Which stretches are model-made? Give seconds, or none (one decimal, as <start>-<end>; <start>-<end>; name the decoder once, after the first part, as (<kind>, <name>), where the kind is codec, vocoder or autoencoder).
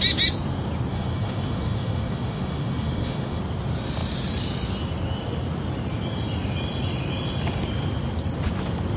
0.9-3.4 (autoencoder, DAC-VAE)